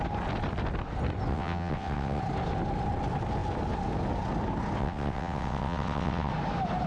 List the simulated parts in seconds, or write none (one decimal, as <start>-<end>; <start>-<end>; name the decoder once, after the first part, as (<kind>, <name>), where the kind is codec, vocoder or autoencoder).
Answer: 1.3-2.2 (vocoder, WaveNeXt); 4.8-6.3